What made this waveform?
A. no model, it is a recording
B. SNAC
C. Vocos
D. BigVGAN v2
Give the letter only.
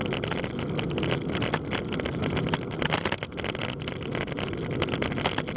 A